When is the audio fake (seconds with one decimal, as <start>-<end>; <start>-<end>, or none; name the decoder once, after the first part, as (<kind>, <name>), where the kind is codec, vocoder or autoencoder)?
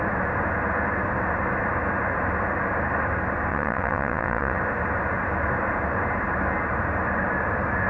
3.5-4.6 (vocoder, WaveNeXt)